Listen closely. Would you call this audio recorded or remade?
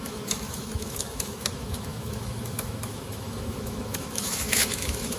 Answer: remade